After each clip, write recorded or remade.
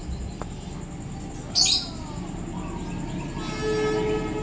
recorded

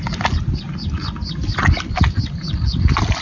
recorded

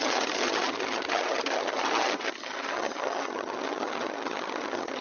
remade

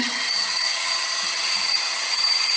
remade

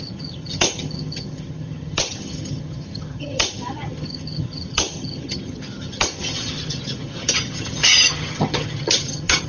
remade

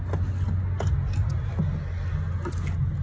recorded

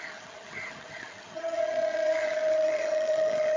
remade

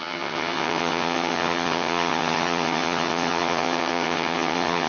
remade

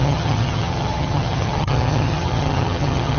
remade